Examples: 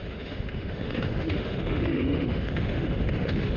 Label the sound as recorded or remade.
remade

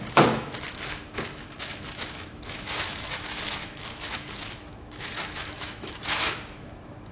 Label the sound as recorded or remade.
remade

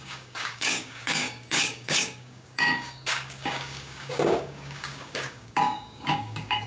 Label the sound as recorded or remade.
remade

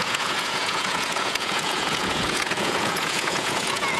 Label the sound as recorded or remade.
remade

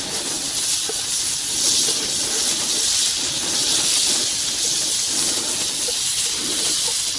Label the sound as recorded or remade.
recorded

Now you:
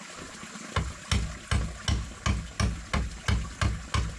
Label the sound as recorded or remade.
recorded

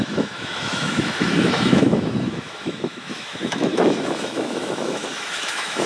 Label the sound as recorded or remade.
remade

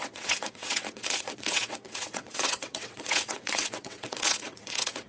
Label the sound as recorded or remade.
remade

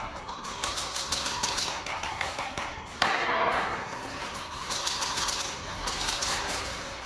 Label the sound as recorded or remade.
remade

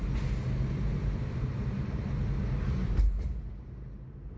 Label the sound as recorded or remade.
recorded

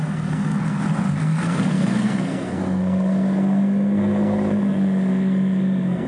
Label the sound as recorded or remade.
remade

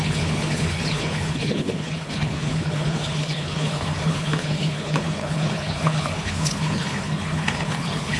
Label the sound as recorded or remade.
remade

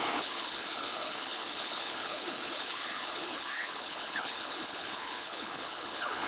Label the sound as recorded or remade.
remade